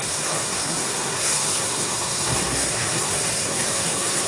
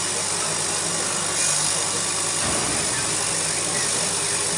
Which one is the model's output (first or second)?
first